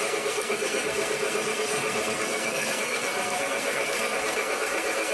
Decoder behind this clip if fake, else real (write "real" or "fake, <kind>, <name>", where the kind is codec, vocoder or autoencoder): fake, codec, SNAC